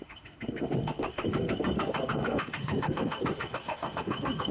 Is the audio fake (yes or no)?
yes